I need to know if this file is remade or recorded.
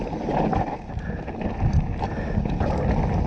recorded